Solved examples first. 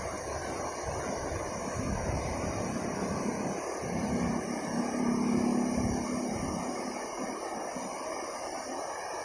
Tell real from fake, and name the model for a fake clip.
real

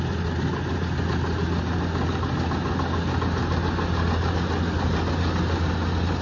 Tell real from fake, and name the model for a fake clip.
real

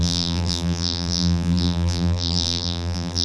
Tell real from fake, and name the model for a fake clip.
fake, vocoder, BigVGAN v2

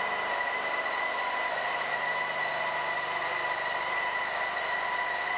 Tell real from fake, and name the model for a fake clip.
real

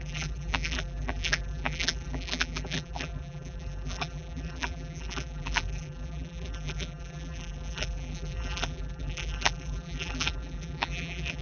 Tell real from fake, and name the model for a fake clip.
fake, vocoder, BigVGAN v2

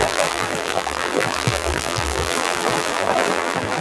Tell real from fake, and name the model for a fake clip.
fake, vocoder, BigVGAN v2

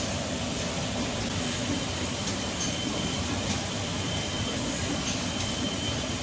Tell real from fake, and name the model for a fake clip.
fake, vocoder, BigVGAN v2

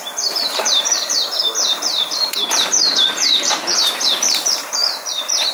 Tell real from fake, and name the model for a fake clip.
fake, vocoder, BigVGAN v2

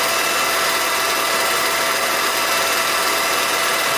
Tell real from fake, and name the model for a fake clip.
real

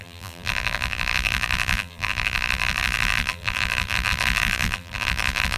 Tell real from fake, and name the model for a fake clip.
fake, vocoder, BigVGAN v2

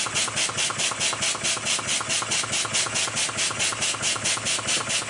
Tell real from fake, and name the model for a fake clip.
real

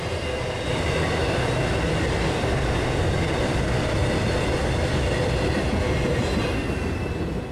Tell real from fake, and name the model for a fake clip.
real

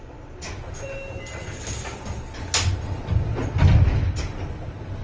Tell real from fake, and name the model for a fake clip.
real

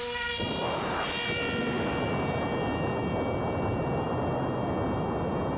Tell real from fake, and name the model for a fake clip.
real